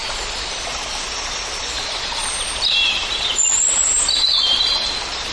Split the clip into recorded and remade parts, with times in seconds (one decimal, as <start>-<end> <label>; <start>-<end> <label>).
0.0-5.3 recorded